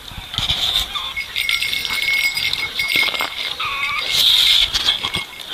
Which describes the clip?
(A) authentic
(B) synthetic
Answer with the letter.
A